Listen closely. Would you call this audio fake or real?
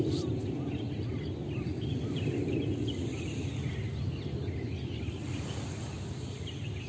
real